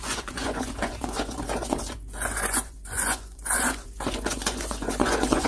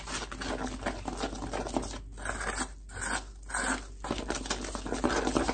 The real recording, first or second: second